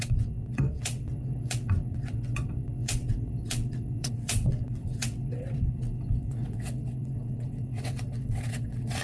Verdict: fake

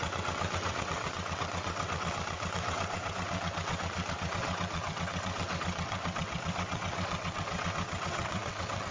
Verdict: fake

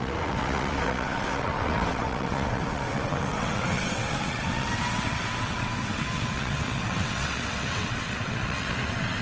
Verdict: fake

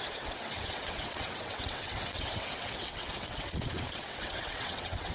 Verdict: fake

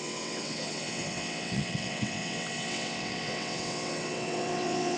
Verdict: fake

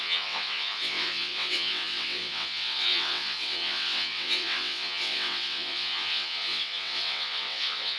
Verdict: fake